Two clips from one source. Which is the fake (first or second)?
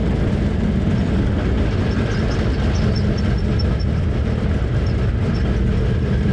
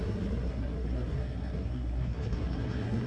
second